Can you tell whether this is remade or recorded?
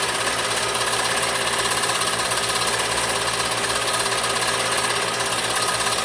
recorded